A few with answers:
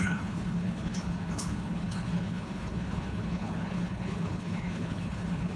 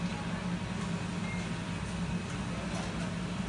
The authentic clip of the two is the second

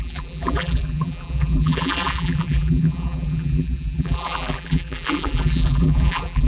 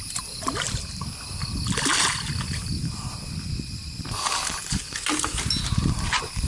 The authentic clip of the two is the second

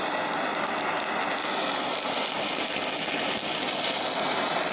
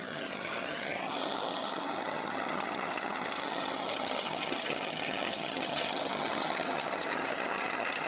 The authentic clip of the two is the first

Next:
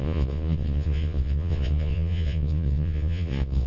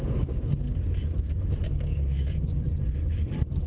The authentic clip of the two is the second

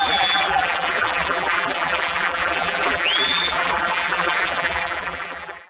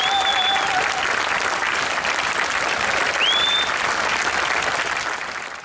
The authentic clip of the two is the second